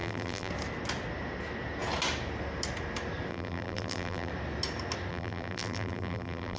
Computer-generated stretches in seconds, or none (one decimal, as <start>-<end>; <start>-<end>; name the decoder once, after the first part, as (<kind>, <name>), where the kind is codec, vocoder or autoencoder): 0.0-0.5 (vocoder, BigVGAN v2); 3.3-4.3; 5.1-6.6